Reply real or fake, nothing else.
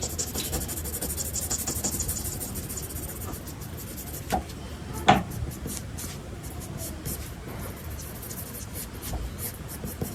real